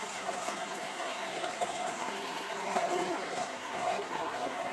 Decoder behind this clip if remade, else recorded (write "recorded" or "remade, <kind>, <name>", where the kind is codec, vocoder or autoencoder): remade, codec, SNAC